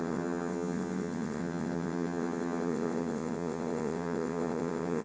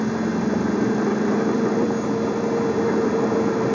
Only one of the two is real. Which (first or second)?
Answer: second